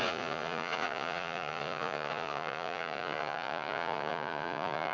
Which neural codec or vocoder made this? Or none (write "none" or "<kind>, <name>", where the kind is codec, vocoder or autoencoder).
vocoder, Vocos